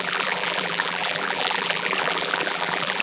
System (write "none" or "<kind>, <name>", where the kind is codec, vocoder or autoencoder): vocoder, BigVGAN v2